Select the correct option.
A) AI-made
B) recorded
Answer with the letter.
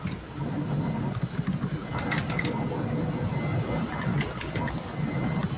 B